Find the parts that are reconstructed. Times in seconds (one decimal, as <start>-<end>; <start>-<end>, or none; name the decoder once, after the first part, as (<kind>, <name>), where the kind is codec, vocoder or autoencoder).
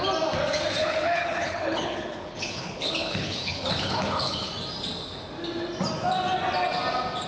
0.8-4.5 (codec, HILCodec)